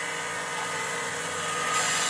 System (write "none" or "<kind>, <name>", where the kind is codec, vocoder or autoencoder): vocoder, Vocos